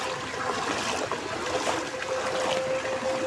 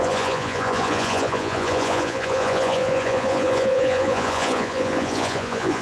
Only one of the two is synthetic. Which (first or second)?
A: second